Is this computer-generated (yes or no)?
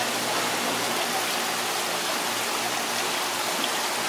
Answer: no